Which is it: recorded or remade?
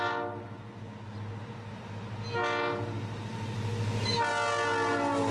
recorded